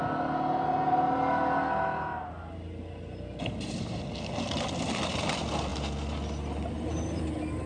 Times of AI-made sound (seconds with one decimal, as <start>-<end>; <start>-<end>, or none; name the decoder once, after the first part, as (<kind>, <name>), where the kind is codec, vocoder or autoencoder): none